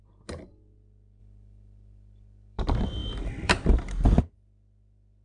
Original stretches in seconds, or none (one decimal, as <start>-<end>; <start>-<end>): 0.0-1.2; 2.6-3.0; 3.8-5.2